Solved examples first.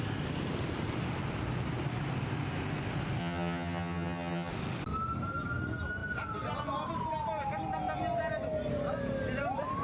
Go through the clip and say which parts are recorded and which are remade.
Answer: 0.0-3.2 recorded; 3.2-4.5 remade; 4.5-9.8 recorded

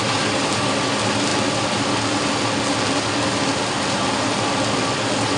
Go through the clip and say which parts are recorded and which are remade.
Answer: 0.0-5.4 recorded

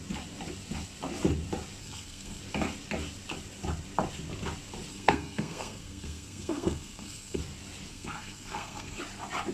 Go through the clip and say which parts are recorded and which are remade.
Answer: 0.0-1.8 recorded; 1.8-2.4 remade; 2.4-4.9 recorded; 4.9-7.4 remade; 7.4-7.9 recorded; 7.9-9.0 remade; 9.0-9.5 recorded

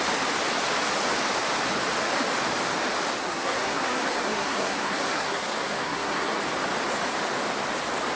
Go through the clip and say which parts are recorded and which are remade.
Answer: 0.0-3.2 recorded; 3.2-6.4 remade; 6.4-8.2 recorded